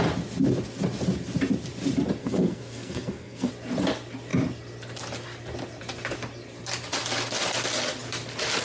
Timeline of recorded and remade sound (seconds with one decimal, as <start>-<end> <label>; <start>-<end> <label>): 0.0-2.2 recorded; 2.2-3.5 remade; 3.5-8.6 recorded